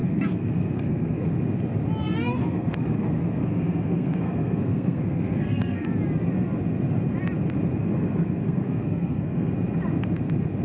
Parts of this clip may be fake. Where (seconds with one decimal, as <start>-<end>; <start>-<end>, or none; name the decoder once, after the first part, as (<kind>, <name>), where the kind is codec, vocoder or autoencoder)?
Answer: 0.0-1.2 (codec, SNAC); 2.0-5.9; 7.8-9.5